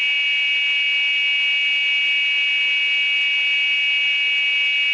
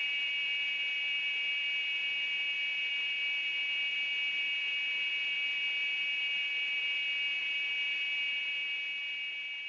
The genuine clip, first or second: first